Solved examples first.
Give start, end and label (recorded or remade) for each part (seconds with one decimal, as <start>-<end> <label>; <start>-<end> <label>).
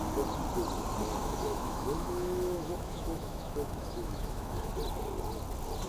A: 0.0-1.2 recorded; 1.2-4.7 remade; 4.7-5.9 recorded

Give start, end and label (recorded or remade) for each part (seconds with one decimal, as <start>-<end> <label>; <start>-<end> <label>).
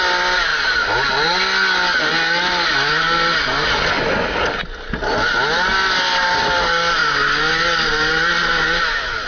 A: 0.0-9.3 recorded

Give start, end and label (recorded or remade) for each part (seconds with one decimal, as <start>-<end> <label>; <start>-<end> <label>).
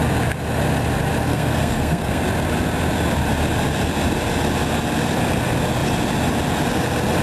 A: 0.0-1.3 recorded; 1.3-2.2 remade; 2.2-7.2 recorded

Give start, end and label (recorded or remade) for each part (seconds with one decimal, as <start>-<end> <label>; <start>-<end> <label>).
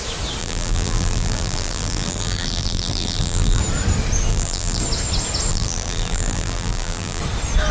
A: 0.0-0.4 recorded; 0.4-3.6 remade; 3.6-4.3 recorded; 4.3-4.8 remade; 4.8-5.5 recorded; 5.5-7.2 remade; 7.2-7.7 recorded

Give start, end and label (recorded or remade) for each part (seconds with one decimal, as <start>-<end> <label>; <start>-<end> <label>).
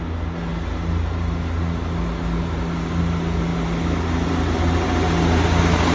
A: 0.0-5.9 recorded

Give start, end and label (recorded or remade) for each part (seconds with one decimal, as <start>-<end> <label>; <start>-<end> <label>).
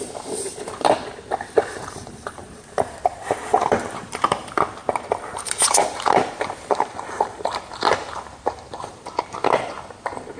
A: 0.0-10.4 remade